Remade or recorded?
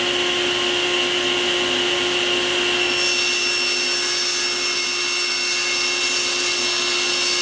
recorded